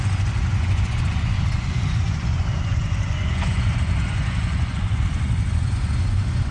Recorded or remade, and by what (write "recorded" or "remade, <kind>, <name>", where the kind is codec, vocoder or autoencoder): remade, vocoder, Vocos